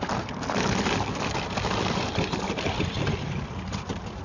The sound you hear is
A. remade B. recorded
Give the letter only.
B